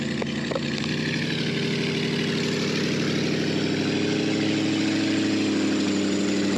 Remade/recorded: recorded